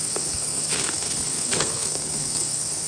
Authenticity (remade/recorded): remade